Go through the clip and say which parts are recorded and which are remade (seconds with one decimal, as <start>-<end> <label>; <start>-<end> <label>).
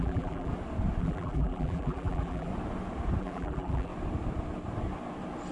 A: 0.0-0.5 remade; 0.5-1.0 recorded; 1.0-2.5 remade; 2.5-3.2 recorded; 3.2-3.9 remade; 3.9-5.5 recorded